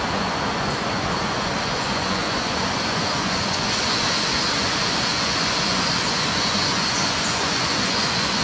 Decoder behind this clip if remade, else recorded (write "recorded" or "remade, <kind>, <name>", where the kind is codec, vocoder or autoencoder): remade, vocoder, Vocos